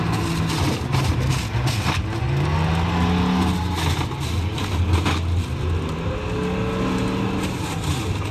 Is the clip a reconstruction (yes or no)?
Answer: no